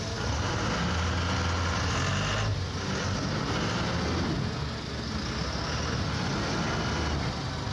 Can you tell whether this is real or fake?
real